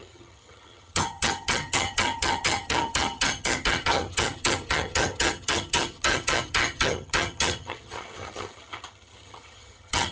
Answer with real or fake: fake